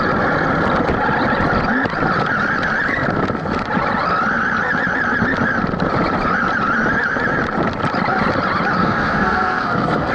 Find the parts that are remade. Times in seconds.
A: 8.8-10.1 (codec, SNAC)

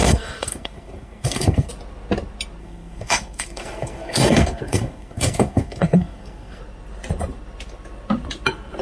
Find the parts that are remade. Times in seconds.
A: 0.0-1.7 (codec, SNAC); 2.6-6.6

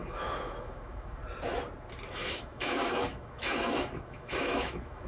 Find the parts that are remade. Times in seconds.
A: 0.0-1.2 (autoencoder, DAC-VAE); 2.1-5.1

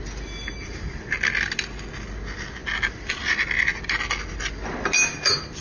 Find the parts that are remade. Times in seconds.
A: none